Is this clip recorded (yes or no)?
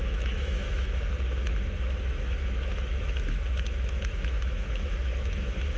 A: no